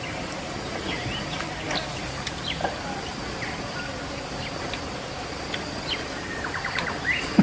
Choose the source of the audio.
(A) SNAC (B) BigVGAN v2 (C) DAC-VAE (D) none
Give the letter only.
D